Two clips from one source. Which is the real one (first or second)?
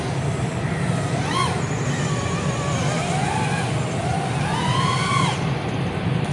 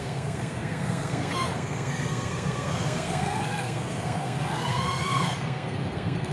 first